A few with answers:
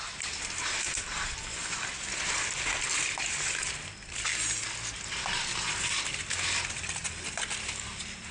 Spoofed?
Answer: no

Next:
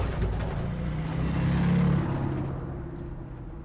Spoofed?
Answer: no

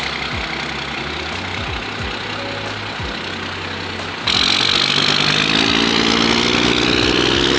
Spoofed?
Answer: no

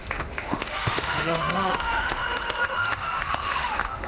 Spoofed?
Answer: yes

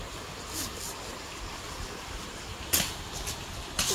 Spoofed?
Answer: no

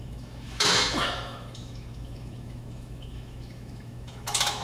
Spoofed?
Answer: yes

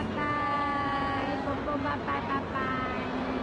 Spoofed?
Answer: no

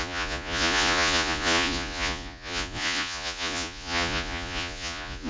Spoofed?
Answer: yes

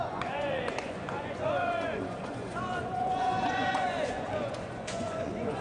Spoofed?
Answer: yes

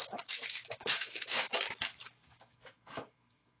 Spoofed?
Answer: yes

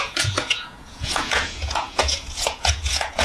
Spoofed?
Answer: yes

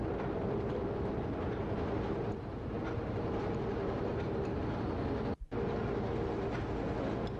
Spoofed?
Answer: no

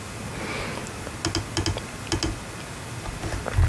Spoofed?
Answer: no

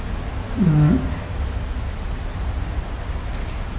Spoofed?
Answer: no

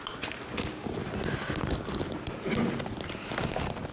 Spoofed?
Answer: no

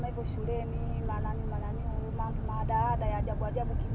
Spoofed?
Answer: no